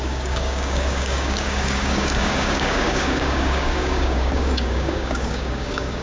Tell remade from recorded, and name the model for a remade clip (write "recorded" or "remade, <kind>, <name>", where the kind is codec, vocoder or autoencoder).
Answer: remade, codec, DAC